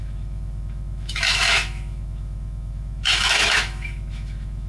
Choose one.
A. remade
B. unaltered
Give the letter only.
A